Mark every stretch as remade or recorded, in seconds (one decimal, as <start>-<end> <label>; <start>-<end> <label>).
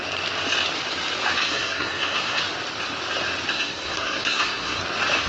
0.0-1.4 recorded; 1.4-2.4 remade; 2.4-3.5 recorded; 3.5-4.8 remade; 4.8-5.3 recorded